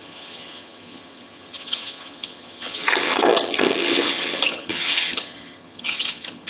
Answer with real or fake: fake